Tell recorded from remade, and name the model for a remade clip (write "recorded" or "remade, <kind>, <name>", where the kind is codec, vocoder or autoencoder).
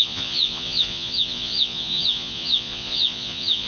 remade, vocoder, Vocos